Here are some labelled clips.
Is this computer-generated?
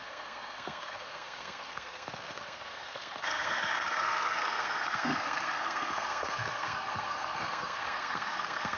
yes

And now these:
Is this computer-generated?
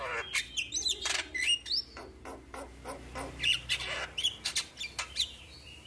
no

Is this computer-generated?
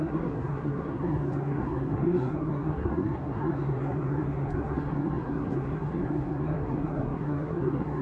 yes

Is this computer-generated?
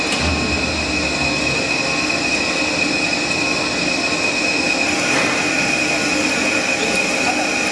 no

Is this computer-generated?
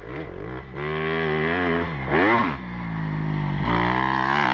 no